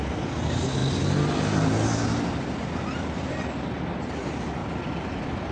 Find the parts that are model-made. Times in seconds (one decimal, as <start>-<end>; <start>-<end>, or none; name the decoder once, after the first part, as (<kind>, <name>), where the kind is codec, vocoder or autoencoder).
none